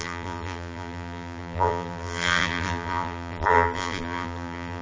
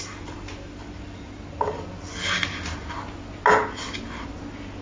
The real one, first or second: second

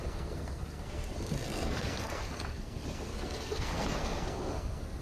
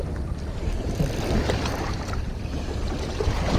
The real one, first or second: second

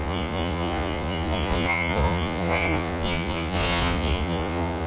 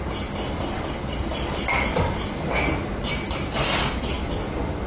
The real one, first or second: second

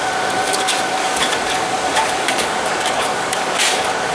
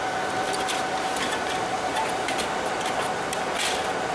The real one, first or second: second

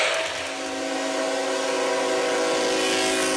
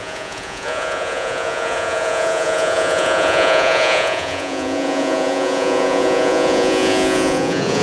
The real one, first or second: first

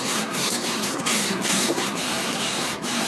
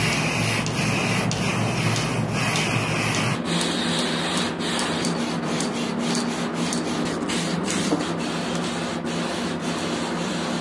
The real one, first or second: second